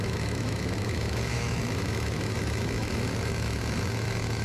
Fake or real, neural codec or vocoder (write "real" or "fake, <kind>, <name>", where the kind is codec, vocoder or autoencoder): fake, autoencoder, DAC-VAE